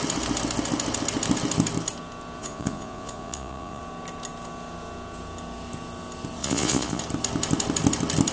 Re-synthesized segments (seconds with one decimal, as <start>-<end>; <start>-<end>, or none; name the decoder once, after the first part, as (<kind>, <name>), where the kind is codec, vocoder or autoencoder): 2.4-3.8 (vocoder, Vocos); 6.4-7.0